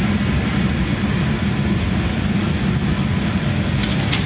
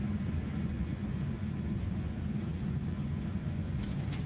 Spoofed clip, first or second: second